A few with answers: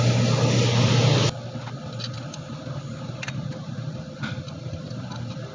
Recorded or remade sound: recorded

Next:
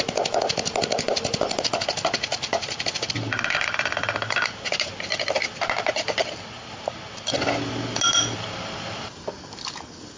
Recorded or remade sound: recorded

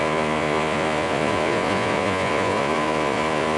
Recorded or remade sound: remade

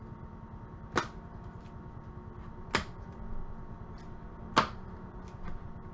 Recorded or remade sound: recorded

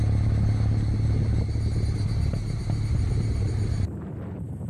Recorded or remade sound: recorded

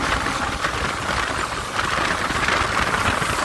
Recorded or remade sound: recorded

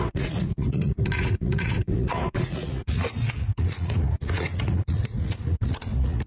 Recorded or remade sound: remade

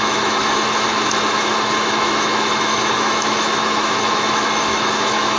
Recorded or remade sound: remade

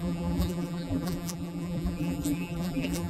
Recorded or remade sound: remade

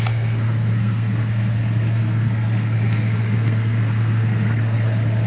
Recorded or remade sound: remade